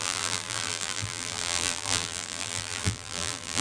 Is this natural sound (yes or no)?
no